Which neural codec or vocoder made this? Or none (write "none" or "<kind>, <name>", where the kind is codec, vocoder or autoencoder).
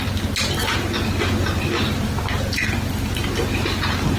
none